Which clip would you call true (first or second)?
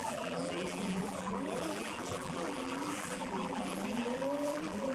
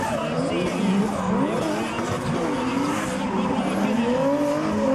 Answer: second